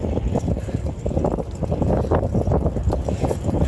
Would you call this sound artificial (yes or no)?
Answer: no